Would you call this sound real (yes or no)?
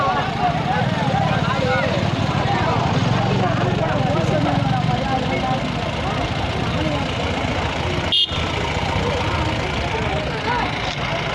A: yes